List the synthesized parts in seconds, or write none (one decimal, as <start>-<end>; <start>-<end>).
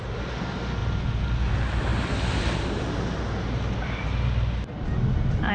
none